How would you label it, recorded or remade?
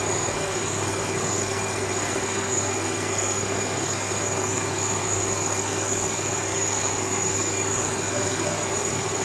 remade